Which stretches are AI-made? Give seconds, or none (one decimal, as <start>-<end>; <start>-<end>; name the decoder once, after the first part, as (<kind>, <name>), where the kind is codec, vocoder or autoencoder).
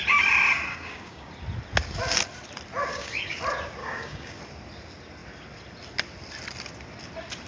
0.7-1.3 (codec, DAC); 2.9-3.4; 3.8-4.4